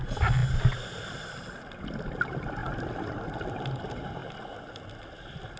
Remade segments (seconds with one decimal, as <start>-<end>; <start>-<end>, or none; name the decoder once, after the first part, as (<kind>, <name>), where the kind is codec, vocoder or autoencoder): 2.6-3.1 (vocoder, BigVGAN v2); 4.2-5.6